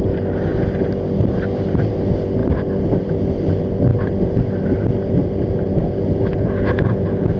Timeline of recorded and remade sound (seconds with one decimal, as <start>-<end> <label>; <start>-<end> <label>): 0.0-7.4 recorded